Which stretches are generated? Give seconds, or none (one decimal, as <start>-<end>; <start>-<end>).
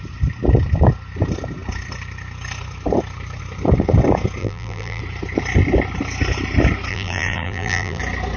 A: 4.4-5.0; 6.9-8.0